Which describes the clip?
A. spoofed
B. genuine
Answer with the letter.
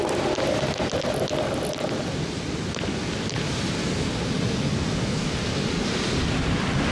B